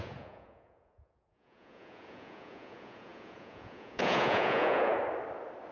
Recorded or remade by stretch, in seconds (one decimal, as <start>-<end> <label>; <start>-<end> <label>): 0.0-4.9 remade; 4.9-5.7 recorded